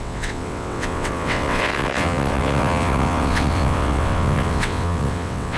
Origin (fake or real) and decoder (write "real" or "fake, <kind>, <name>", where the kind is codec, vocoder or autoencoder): fake, vocoder, WaveNeXt